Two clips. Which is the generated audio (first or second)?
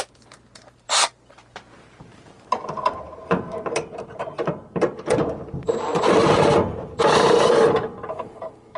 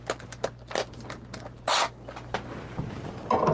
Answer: first